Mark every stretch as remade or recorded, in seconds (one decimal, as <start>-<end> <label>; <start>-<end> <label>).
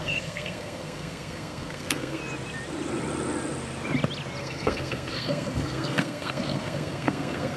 0.0-2.2 remade; 2.2-4.4 recorded; 4.4-7.6 remade